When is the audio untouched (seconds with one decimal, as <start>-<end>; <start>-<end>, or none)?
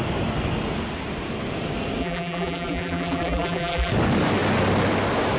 0.0-2.0; 3.9-5.4